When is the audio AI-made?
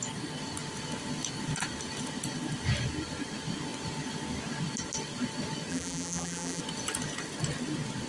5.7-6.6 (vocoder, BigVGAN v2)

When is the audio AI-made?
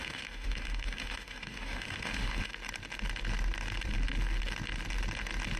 0.0-2.5 (autoencoder, DAC-VAE)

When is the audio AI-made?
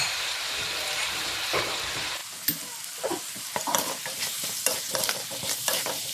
0.0-2.2 (vocoder, BigVGAN v2); 3.2-6.1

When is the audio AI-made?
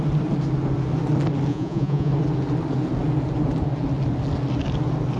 1.5-2.1 (vocoder, Vocos)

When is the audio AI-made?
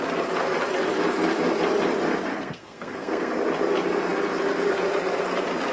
2.3-3.3 (codec, SNAC)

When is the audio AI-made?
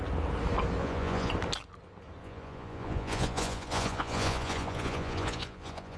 0.8-1.3 (vocoder, Vocos); 2.2-6.0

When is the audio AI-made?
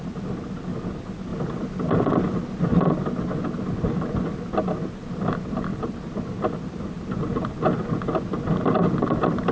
1.3-2.8 (vocoder, BigVGAN v2); 5.7-7.1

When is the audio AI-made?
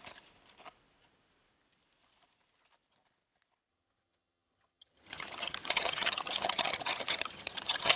3.7-8.0 (vocoder, HiFi-GAN)